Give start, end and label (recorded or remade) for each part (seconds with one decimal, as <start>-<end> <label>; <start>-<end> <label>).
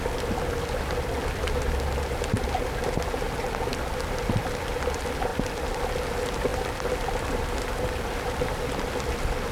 0.0-9.5 recorded